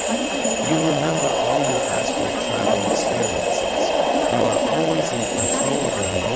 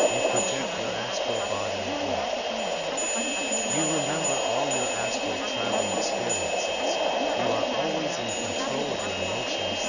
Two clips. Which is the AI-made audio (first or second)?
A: first